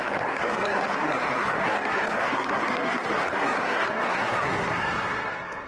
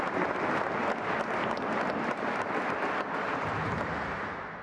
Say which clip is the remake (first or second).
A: first